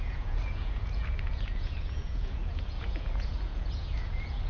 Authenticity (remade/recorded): remade